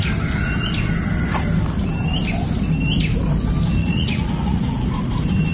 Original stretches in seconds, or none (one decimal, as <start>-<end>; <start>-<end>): 0.0-3.8; 4.9-5.5